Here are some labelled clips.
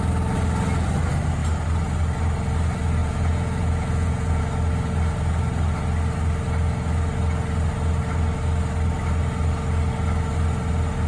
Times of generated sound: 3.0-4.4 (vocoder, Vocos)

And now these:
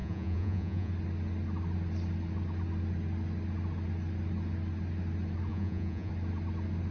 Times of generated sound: 0.0-0.9 (vocoder, Vocos); 5.5-6.1

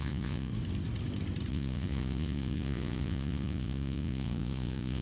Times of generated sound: 0.0-0.5 (vocoder, Vocos); 1.5-5.0

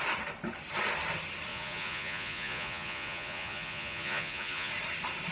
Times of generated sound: 1.5-4.7 (vocoder, Vocos)

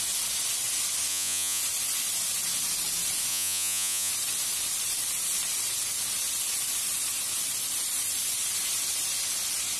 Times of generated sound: 1.1-1.6 (vocoder, Vocos); 3.3-4.1

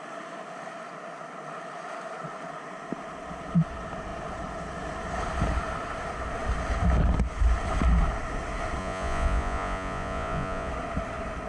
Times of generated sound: 8.8-10.7 (vocoder, Vocos)

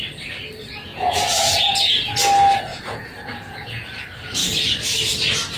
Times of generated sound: 0.9-1.7 (vocoder, Vocos); 2.7-4.0